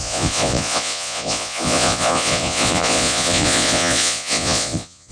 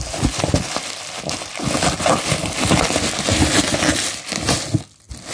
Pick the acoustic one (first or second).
second